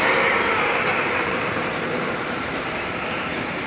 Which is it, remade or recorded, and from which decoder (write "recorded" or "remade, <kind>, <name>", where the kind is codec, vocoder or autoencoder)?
remade, vocoder, BigVGAN v2